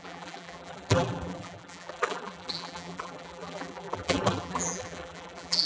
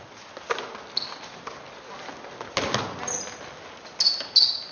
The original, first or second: second